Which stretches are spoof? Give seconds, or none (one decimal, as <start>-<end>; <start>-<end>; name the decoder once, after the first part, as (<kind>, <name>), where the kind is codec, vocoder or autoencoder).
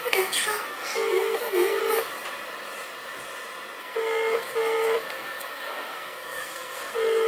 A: 0.0-1.8 (codec, SNAC); 3.8-7.3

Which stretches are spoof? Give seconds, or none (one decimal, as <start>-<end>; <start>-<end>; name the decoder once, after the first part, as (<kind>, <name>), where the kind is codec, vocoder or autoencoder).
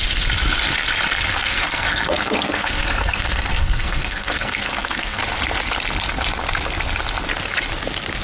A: 1.3-5.2 (codec, SNAC)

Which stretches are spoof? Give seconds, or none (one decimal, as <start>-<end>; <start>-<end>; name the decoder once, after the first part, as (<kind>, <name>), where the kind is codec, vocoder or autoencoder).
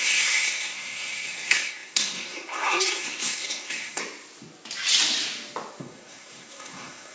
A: 0.0-4.0 (codec, SNAC); 5.8-7.1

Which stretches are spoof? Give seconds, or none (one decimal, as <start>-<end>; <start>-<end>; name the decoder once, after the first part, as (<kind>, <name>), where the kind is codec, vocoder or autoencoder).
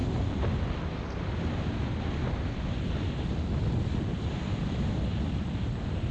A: none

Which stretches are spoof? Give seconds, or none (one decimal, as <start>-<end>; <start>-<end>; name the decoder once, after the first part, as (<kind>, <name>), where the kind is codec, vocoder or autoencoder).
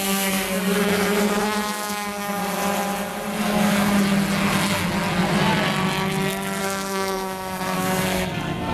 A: 0.0-2.4 (codec, SNAC); 3.4-3.9; 6.6-8.7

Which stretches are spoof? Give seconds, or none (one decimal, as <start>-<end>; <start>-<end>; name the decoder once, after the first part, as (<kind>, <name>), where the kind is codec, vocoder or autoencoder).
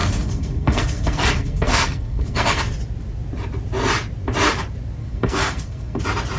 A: 0.0-2.6 (codec, SNAC); 5.0-6.0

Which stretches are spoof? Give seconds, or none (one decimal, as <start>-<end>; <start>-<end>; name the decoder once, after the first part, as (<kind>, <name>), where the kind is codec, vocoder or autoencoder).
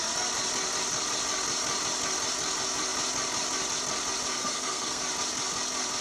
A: 4.3-5.0 (codec, SNAC)